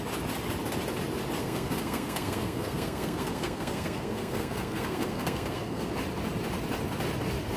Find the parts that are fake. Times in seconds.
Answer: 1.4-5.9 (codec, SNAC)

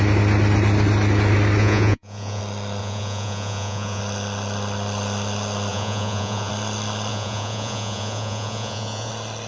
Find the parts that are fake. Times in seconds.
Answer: 1.6-2.4 (vocoder, Vocos); 2.8-4.0; 5.7-6.5; 7.1-9.1

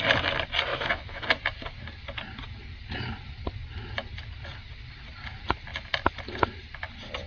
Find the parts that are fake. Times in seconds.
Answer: 0.7-1.2 (autoencoder, DAC-VAE)

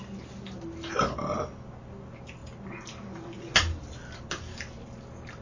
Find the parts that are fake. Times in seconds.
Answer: none

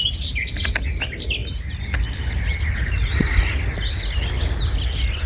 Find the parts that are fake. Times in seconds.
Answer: none